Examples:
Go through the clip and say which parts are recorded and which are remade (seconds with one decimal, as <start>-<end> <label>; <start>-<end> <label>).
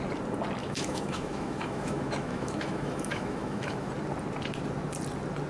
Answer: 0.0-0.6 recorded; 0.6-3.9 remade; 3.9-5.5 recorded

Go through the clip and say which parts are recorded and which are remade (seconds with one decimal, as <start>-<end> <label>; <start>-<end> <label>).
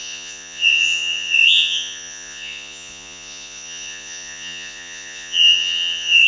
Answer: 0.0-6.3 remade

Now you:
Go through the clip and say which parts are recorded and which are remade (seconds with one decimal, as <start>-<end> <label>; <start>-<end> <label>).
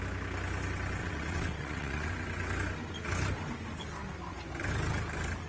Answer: 0.0-1.0 recorded; 1.0-2.1 remade; 2.1-5.5 recorded